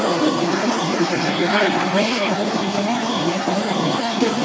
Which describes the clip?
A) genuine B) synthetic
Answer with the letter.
B